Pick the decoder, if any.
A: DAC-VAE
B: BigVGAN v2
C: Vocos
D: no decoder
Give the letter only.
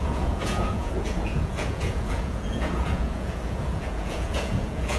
C